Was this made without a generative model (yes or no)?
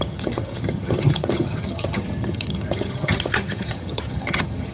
no